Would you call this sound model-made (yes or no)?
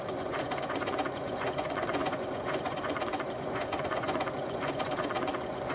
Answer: yes